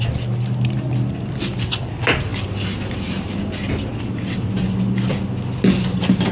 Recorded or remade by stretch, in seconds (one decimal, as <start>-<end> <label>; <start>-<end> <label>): 0.0-6.3 recorded